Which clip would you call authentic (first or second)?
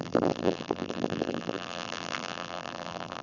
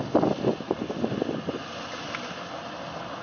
second